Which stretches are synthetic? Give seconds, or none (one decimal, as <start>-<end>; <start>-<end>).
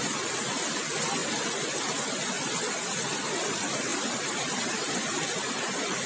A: 3.9-4.7